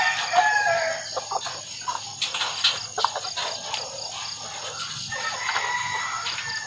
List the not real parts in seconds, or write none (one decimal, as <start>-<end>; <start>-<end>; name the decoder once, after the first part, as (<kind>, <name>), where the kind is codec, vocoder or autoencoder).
none